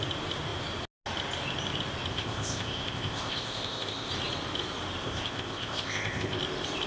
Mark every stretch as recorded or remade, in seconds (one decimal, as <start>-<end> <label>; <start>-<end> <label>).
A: 0.0-2.1 recorded; 2.1-4.1 remade; 4.1-5.0 recorded; 5.0-6.4 remade; 6.4-6.9 recorded